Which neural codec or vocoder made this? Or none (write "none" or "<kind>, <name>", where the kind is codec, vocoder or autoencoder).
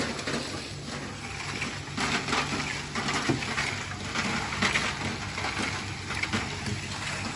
none